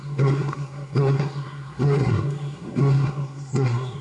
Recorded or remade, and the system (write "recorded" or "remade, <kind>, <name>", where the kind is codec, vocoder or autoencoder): remade, codec, SNAC